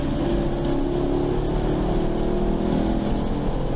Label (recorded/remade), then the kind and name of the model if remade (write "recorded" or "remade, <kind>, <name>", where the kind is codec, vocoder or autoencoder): recorded